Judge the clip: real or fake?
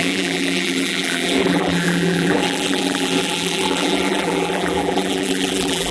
fake